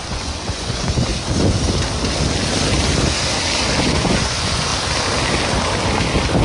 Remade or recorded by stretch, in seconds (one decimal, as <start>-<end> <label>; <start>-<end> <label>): 0.0-1.1 remade; 1.1-3.8 recorded; 3.8-4.7 remade; 4.7-6.4 recorded